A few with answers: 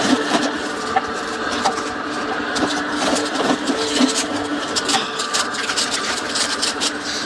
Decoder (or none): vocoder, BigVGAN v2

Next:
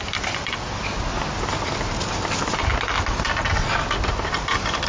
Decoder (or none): none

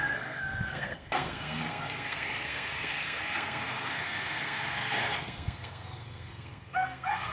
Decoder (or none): codec, SNAC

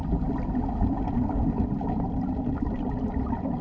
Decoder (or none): none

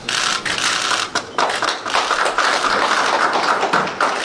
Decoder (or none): none